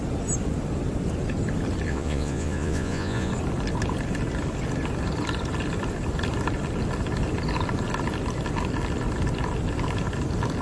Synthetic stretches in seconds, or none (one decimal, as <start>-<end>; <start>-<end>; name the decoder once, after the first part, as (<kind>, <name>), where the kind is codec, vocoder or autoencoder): 1.9-3.3 (vocoder, Vocos)